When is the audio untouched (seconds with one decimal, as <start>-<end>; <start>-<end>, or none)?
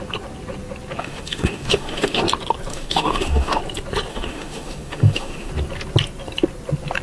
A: 0.0-1.0; 2.2-2.7; 3.6-4.1; 5.5-7.0